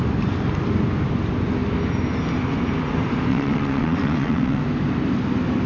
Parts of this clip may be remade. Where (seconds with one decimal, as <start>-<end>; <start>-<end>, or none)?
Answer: 3.3-4.6